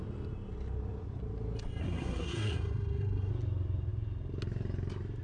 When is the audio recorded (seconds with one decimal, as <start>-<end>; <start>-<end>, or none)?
0.0-1.8; 3.3-5.2